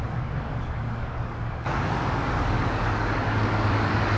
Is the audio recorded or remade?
remade